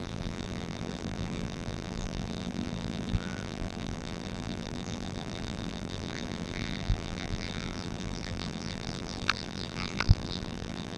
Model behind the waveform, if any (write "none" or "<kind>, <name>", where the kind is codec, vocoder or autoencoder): vocoder, BigVGAN v2